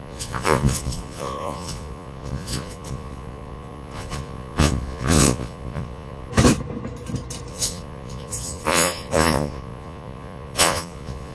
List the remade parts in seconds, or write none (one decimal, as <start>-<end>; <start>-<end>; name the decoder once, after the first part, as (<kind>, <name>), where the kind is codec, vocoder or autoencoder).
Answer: 0.0-6.3 (vocoder, Vocos); 7.5-11.3